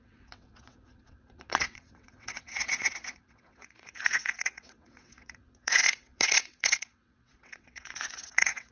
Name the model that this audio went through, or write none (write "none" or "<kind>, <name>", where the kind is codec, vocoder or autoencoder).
vocoder, WaveNeXt